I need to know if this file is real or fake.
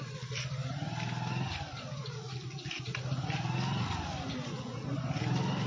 real